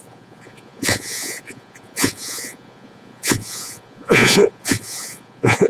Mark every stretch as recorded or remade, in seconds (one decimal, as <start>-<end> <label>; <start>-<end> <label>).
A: 0.0-5.7 remade